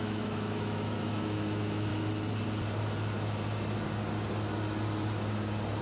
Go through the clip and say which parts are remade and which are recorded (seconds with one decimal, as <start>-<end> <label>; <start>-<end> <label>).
0.0-1.9 remade; 1.9-5.8 recorded

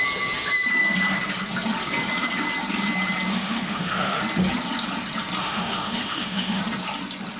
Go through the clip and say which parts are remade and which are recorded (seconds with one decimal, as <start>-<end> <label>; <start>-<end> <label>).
0.0-3.3 recorded; 3.3-4.2 remade; 4.2-5.4 recorded; 5.4-6.6 remade; 6.6-7.4 recorded

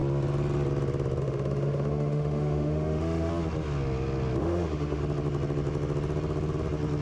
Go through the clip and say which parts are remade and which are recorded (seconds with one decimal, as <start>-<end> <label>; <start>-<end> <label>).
0.0-1.2 recorded; 1.2-3.3 remade; 3.3-4.4 recorded; 4.4-5.0 remade; 5.0-7.0 recorded

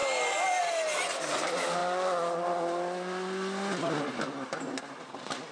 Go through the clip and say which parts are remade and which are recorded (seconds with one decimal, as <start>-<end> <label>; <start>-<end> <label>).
0.0-5.5 recorded